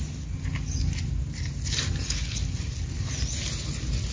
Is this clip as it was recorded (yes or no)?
yes